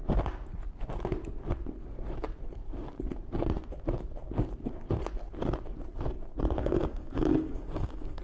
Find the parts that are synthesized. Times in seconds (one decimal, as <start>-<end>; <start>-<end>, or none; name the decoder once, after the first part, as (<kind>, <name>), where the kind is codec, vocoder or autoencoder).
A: 6.6-8.2 (codec, DAC)